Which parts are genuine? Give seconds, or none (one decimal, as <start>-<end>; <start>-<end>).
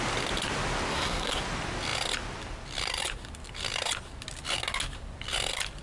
0.0-0.9; 1.4-5.8